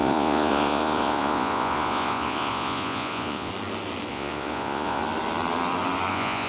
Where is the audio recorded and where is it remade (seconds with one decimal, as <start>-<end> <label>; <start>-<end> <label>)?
0.0-3.5 remade; 3.5-4.1 recorded; 4.1-5.0 remade; 5.0-6.1 recorded; 6.1-6.5 remade